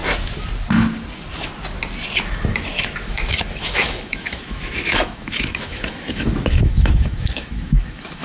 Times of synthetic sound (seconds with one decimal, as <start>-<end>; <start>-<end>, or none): 2.5-8.2